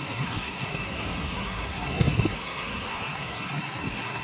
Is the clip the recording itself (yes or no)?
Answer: no